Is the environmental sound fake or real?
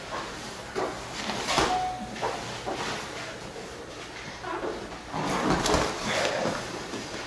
real